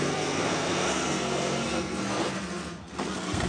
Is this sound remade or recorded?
remade